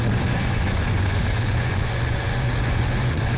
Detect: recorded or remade remade